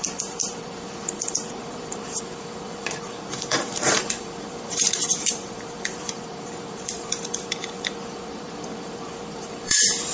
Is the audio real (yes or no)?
no